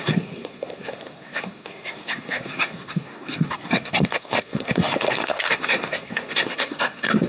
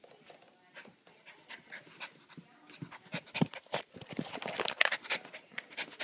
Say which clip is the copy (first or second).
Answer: first